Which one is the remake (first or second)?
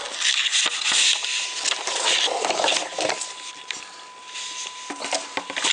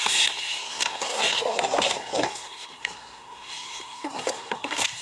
second